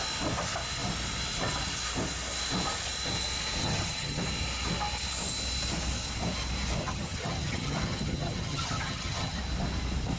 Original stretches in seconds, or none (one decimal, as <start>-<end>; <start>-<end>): 0.0-3.6; 4.2-6.8; 9.4-10.2

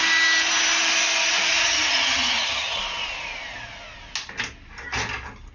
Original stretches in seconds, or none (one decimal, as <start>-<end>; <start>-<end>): 0.0-1.6; 2.8-5.5